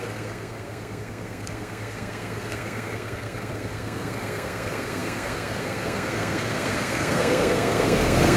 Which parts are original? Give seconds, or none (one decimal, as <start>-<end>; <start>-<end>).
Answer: none